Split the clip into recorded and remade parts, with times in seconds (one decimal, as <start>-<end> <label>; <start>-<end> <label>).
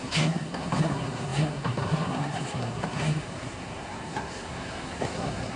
0.0-5.6 remade